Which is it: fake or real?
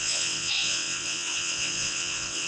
fake